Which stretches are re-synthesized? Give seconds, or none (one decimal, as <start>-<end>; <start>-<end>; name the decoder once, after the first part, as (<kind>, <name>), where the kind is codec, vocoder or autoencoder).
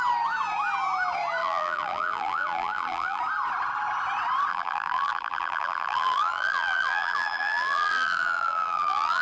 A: 1.4-3.2 (vocoder, BigVGAN v2); 4.5-9.2